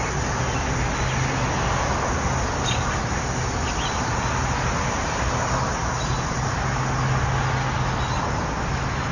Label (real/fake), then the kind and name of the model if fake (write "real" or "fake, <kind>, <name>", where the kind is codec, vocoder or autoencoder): real